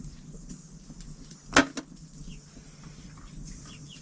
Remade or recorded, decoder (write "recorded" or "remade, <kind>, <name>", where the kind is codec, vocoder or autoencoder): recorded